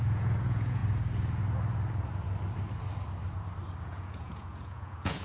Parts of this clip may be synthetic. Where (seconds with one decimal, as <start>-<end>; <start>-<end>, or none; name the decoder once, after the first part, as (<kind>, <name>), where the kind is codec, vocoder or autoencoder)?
0.0-0.8 (vocoder, Vocos); 3.8-5.2